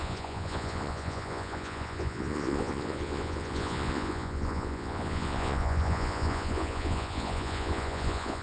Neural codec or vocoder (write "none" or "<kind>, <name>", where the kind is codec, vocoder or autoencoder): vocoder, Vocos